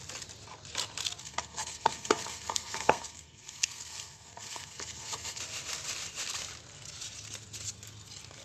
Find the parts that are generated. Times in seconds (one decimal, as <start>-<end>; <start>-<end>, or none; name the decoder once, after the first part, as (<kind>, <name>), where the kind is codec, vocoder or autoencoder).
1.2-5.4 (codec, SNAC)